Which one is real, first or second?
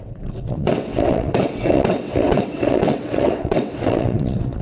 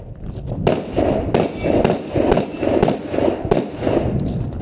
second